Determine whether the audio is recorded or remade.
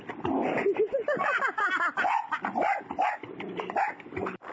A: recorded